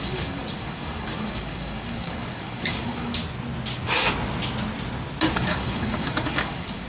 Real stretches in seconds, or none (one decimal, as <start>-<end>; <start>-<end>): 3.2-5.3